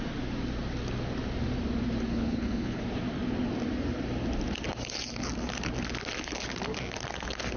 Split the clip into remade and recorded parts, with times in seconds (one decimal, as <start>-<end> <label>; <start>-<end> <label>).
0.0-2.1 recorded; 2.1-2.8 remade; 2.8-7.6 recorded